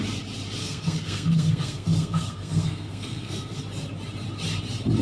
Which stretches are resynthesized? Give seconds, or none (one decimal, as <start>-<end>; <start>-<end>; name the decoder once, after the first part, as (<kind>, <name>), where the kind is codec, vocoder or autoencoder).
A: 0.6-3.6 (codec, SNAC)